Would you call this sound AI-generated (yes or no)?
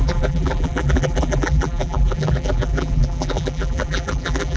yes